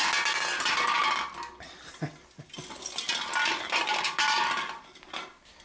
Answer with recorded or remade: recorded